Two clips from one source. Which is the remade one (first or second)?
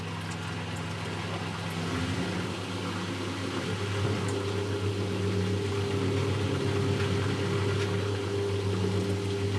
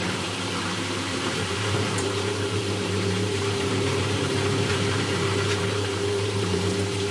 second